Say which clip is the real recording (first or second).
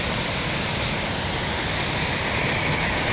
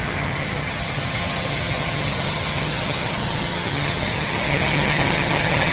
first